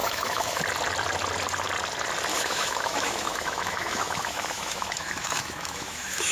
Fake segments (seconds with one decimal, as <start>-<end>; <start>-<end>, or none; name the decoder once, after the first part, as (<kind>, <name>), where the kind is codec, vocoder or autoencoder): 0.0-0.6 (autoencoder, DAC-VAE); 2.3-6.3